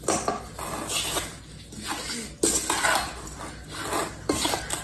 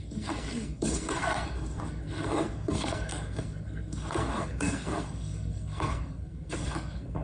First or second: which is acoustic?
first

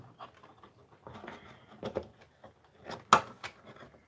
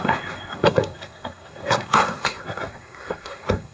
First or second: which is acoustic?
first